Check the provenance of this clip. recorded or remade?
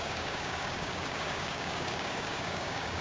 remade